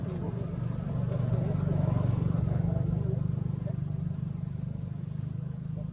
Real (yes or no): yes